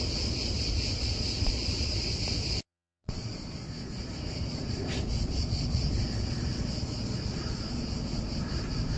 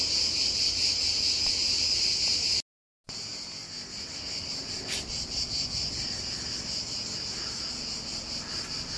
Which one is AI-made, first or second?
first